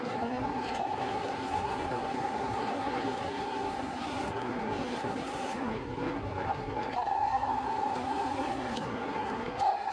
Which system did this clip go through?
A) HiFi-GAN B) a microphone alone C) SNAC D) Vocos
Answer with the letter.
C